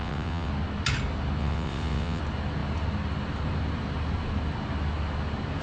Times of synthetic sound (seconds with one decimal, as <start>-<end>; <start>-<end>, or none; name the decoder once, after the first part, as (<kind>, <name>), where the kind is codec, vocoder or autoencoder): 0.0-0.5 (vocoder, WaveNeXt); 1.4-2.2